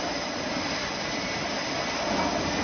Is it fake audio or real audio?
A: real